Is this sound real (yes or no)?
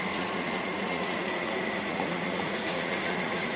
no